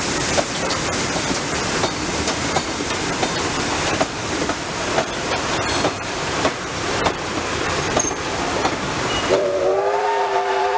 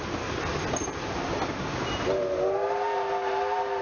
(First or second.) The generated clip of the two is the first